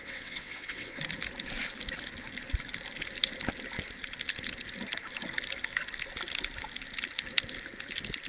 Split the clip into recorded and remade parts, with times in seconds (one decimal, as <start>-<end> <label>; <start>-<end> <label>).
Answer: 0.0-1.0 remade; 1.0-8.3 recorded